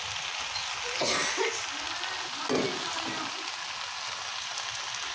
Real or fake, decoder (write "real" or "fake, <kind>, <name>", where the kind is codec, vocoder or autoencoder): real